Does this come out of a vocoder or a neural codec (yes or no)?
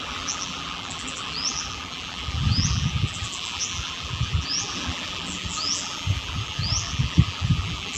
yes